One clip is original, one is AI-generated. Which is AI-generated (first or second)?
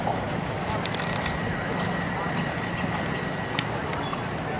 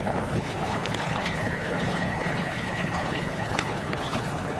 second